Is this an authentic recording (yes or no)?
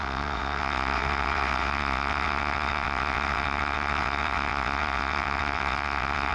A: no